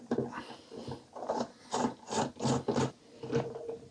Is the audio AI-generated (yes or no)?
no